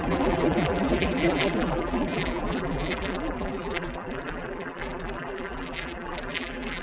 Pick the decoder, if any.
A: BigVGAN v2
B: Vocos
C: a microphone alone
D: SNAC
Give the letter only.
A